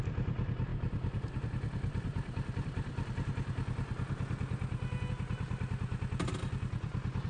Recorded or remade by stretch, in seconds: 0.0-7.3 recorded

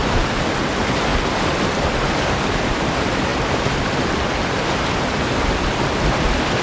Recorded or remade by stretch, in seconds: 0.0-1.1 remade; 1.1-1.6 recorded; 1.6-6.6 remade